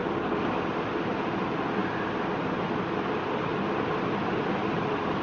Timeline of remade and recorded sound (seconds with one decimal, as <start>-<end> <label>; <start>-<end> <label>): 0.0-5.2 recorded